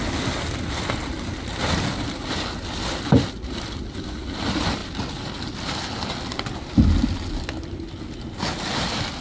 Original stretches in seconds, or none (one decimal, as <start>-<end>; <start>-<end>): 0.0-9.2